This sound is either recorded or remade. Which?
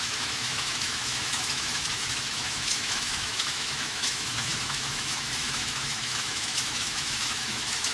remade